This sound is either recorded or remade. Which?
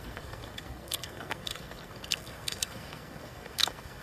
remade